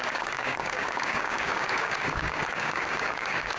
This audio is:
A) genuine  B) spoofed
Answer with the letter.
B